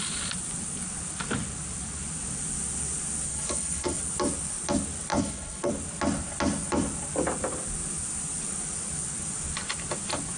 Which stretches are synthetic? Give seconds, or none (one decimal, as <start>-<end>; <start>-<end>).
3.3-4.0; 5.1-5.7